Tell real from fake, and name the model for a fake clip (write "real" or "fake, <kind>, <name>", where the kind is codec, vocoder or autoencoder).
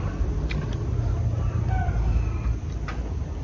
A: real